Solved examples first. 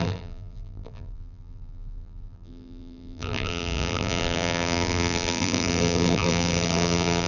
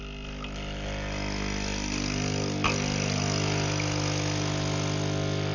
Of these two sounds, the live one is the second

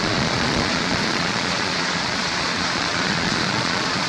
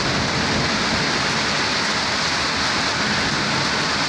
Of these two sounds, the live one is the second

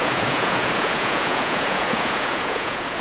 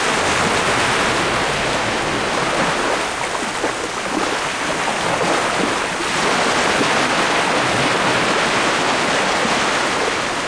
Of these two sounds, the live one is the second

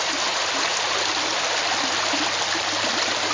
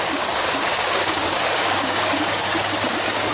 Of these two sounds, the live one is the first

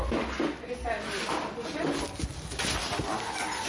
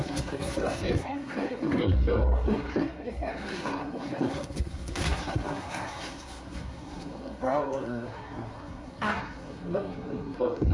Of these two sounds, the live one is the first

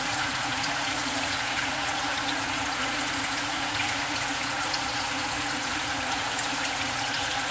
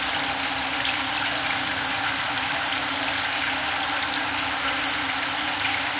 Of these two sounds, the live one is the second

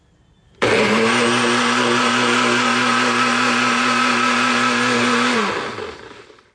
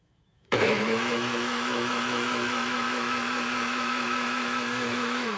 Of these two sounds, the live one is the first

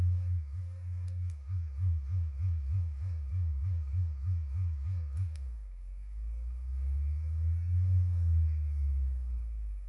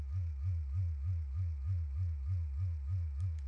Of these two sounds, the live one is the second